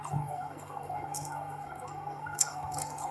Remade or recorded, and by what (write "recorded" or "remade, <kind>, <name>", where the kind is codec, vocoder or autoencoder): remade, codec, SNAC